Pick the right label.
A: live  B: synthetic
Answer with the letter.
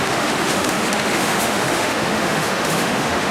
B